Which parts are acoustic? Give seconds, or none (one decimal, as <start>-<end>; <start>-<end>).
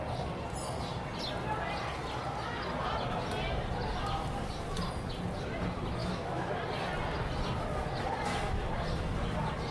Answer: 0.0-6.0; 6.5-9.7